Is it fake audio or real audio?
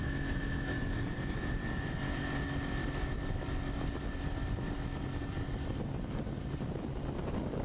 real